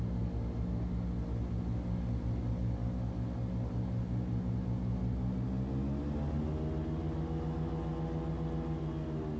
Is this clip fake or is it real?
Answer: real